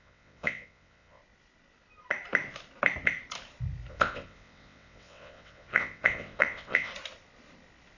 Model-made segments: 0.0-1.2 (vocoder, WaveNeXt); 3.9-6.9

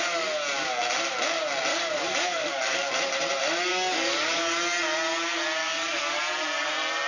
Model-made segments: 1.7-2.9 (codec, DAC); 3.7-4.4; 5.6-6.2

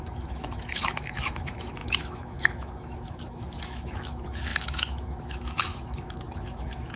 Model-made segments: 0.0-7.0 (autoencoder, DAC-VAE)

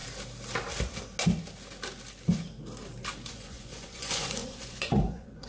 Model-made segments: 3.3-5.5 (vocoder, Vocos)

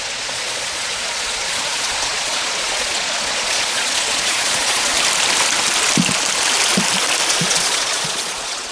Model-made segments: 0.0-4.9 (vocoder, Vocos); 7.3-8.7

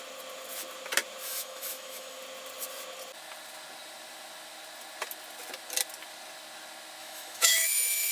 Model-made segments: 1.2-2.2 (autoencoder, DAC-VAE); 7.0-8.1

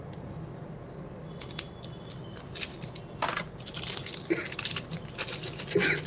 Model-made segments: 4.4-4.9 (vocoder, BigVGAN v2)

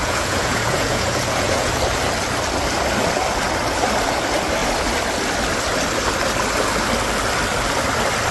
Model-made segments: 0.0-1.7 (vocoder, Vocos)